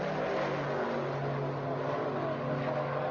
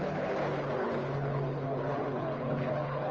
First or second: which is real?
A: first